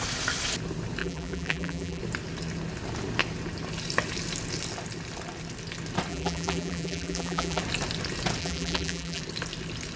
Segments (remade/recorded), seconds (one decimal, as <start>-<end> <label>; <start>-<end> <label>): 0.0-1.0 recorded; 1.0-2.0 remade; 2.0-6.1 recorded; 6.1-7.6 remade; 7.6-8.4 recorded; 8.4-9.2 remade; 9.2-10.0 recorded